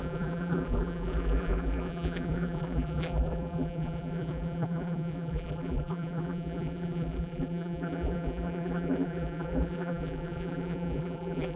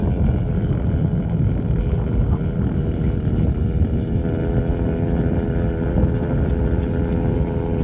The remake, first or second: first